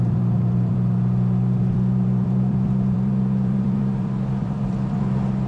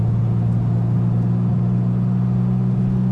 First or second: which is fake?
first